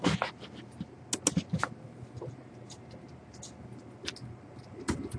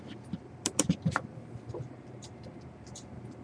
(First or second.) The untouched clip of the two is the first